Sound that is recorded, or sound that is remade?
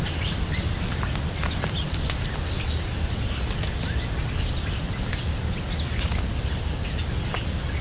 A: recorded